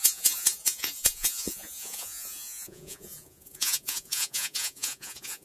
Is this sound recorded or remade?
remade